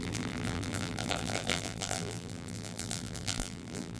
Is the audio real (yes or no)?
no